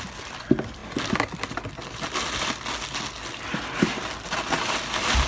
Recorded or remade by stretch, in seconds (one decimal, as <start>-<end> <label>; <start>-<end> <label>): 0.0-5.3 recorded